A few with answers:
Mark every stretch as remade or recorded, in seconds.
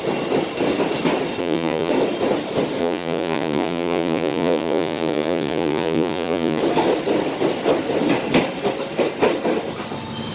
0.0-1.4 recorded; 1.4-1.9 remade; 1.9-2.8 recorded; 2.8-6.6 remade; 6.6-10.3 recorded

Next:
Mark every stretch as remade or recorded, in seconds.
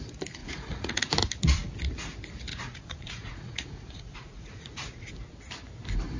0.0-0.4 recorded; 0.4-1.1 remade; 1.1-2.5 recorded; 2.5-5.1 remade; 5.1-6.2 recorded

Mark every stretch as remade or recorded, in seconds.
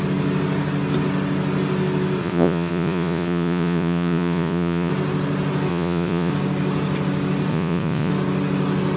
0.0-2.2 recorded; 2.2-4.9 remade; 4.9-5.7 recorded; 5.7-6.3 remade; 6.3-7.5 recorded; 7.5-8.1 remade; 8.1-9.0 recorded